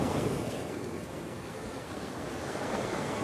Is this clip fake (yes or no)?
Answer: yes